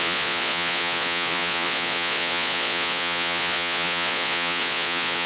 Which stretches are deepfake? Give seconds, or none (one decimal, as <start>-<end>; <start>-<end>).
0.0-5.3